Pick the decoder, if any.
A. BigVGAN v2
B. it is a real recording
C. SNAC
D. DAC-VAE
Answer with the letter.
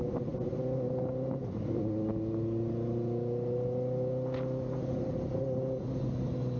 B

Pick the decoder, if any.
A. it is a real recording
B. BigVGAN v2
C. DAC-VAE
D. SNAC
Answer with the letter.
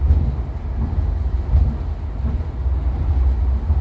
A